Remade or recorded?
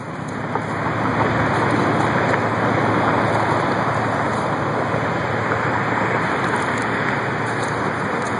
recorded